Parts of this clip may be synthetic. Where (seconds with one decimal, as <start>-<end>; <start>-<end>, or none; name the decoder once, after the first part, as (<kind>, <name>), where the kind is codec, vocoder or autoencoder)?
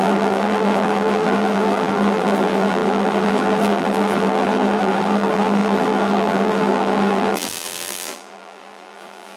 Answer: 0.0-9.4 (vocoder, BigVGAN v2)